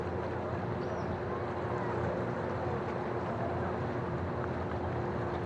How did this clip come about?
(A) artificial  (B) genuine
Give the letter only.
B